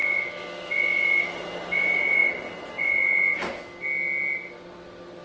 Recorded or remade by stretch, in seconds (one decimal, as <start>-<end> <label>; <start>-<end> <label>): 0.0-5.2 recorded